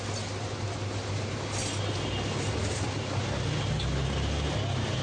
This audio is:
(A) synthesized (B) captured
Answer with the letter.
B